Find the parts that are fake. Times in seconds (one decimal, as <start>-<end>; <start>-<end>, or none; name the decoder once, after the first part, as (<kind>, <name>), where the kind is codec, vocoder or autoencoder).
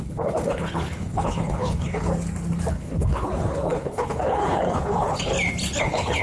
0.0-2.1 (codec, HILCodec); 2.7-5.3; 5.8-6.2